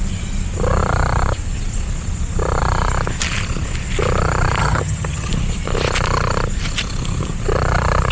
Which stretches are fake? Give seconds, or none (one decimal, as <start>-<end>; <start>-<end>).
4.6-5.3